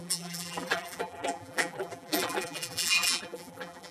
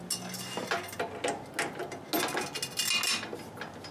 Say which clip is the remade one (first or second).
first